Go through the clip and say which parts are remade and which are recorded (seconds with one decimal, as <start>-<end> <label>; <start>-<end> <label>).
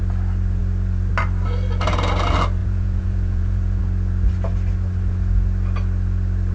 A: 0.0-2.6 recorded; 2.6-3.8 remade; 3.8-6.5 recorded